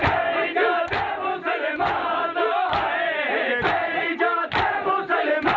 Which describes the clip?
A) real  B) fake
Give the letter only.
A